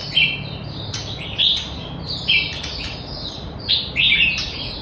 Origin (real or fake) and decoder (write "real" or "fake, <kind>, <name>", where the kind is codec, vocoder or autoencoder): fake, vocoder, BigVGAN v2